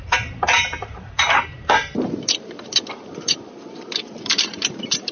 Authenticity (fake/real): fake